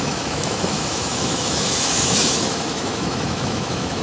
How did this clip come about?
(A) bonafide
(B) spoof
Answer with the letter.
B